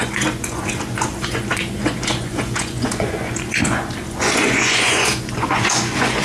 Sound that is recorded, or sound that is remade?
remade